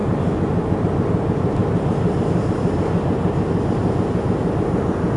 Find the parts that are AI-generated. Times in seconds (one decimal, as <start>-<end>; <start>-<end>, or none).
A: none